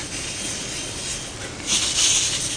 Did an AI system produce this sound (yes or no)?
no